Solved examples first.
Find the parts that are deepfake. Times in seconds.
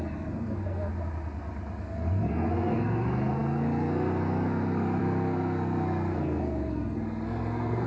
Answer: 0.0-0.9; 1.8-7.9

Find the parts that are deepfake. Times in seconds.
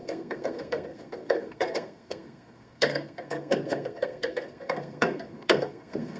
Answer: 0.0-6.2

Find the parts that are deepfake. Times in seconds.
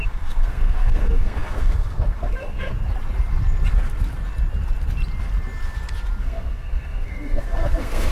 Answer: 0.0-2.7; 6.2-8.1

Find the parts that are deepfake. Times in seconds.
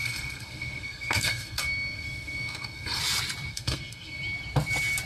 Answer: 0.0-3.0; 3.5-4.2